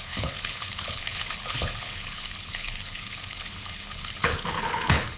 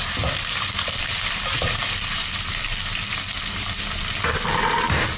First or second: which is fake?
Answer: first